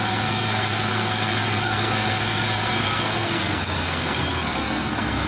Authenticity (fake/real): fake